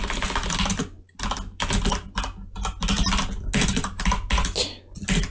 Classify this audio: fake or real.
real